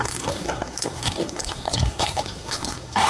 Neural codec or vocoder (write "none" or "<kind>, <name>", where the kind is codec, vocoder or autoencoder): codec, SNAC